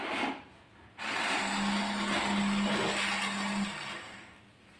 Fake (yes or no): no